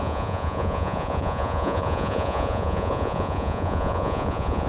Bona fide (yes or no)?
no